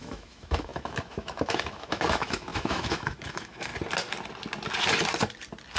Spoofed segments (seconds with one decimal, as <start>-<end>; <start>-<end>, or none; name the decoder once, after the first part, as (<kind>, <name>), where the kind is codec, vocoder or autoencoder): 0.0-3.7 (autoencoder, DAC-VAE)